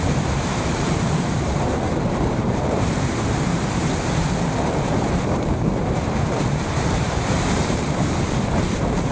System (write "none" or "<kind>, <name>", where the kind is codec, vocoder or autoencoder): vocoder, BigVGAN v2